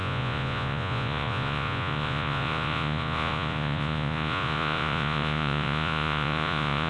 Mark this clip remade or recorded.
remade